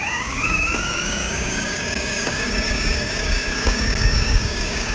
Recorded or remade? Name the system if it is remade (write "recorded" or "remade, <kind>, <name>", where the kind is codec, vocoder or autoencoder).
remade, codec, DAC